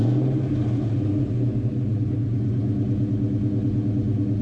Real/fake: real